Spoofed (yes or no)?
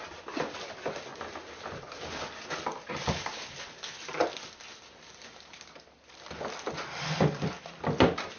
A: no